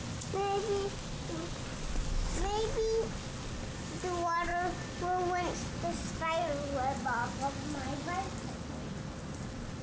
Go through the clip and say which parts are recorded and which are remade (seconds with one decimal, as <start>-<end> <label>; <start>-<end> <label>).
0.0-9.8 recorded

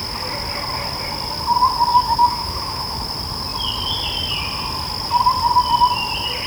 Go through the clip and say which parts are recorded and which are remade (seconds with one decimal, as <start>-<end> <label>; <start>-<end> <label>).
0.0-1.9 recorded; 1.9-3.0 remade; 3.0-6.5 recorded

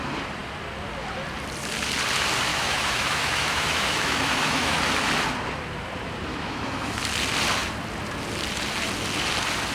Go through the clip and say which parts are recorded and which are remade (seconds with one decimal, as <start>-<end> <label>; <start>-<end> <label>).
0.0-2.5 recorded; 2.5-4.8 remade; 4.8-6.3 recorded; 6.3-7.0 remade; 7.0-9.7 recorded

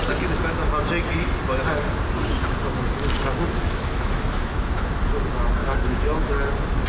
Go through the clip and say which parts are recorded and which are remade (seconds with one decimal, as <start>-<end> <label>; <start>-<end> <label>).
0.0-3.6 recorded; 3.6-5.0 remade; 5.0-5.6 recorded; 5.6-6.3 remade; 6.3-6.9 recorded